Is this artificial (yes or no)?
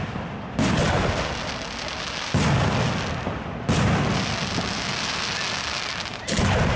no